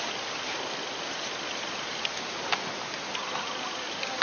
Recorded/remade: recorded